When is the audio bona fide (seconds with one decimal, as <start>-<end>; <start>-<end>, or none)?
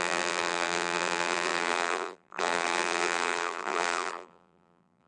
none